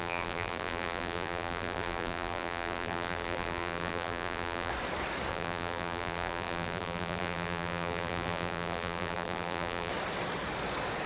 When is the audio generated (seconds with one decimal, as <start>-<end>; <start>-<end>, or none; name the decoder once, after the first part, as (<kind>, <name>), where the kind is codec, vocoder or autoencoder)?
0.0-4.7 (vocoder, BigVGAN v2); 5.3-9.9